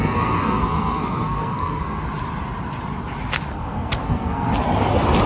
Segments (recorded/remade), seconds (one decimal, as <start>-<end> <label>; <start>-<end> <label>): 0.0-2.0 remade; 2.0-3.5 recorded; 3.5-4.5 remade; 4.5-5.3 recorded